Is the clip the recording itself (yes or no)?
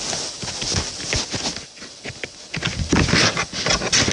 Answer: yes